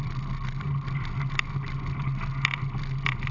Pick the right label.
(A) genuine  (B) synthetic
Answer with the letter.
A